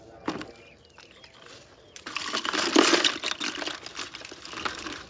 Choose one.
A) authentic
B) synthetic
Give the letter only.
A